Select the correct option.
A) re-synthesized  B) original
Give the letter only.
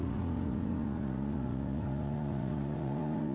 A